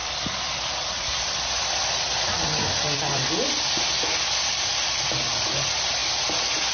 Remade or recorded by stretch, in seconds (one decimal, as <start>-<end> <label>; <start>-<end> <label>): 0.0-3.3 remade; 3.3-6.7 recorded